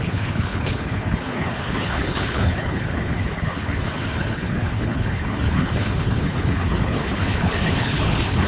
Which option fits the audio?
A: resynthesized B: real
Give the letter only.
A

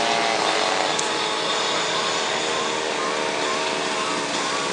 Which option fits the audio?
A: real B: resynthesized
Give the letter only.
A